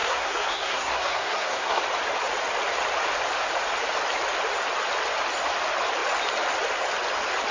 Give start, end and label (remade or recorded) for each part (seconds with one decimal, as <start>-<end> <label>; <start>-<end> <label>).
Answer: 0.0-1.8 remade; 1.8-7.5 recorded